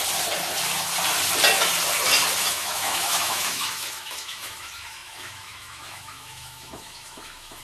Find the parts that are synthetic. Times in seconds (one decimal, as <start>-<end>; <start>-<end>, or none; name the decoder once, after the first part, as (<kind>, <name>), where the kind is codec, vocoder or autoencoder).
2.4-7.6 (autoencoder, DAC-VAE)